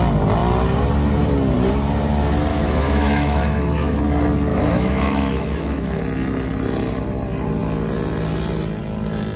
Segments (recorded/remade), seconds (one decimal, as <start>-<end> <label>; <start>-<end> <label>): 0.0-2.5 recorded; 2.5-4.0 remade; 4.0-4.5 recorded; 4.5-6.0 remade; 6.0-9.4 recorded